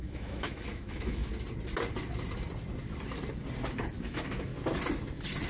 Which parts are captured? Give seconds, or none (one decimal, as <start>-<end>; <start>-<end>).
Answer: 1.2-4.0; 4.5-5.5

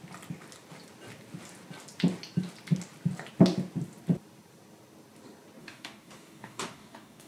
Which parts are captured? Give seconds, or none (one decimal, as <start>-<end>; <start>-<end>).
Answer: 0.0-5.6

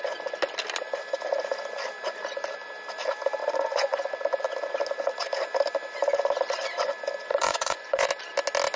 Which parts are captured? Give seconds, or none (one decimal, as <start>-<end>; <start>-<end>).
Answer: 0.0-3.4; 4.1-7.3; 8.1-8.8

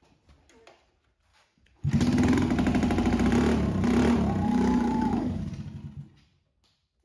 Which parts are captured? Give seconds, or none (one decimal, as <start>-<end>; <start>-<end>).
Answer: 0.0-1.3; 1.9-4.5; 5.4-7.0

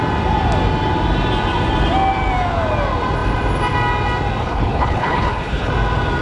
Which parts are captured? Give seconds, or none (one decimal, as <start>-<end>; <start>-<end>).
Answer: 0.0-4.4; 5.7-6.2

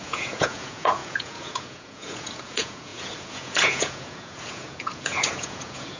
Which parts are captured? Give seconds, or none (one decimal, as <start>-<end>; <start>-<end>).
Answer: none